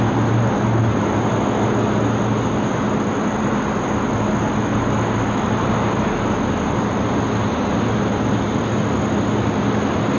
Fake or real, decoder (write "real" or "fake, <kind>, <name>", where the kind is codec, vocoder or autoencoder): real